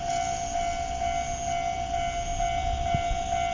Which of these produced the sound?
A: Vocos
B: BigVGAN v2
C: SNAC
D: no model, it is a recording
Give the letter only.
D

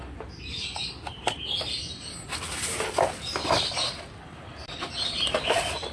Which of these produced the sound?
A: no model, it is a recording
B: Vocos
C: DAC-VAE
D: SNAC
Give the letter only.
A